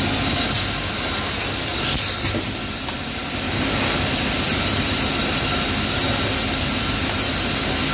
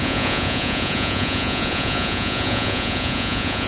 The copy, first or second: second